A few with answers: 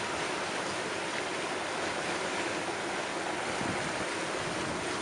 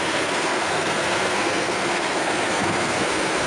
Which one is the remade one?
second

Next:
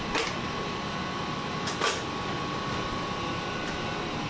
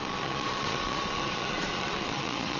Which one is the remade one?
second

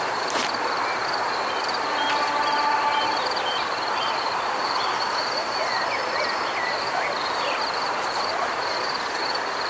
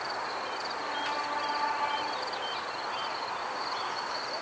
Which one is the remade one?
first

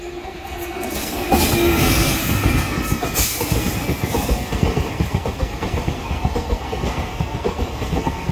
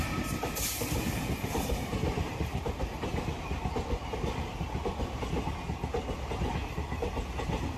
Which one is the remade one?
first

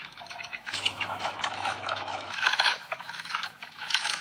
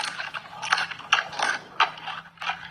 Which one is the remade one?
first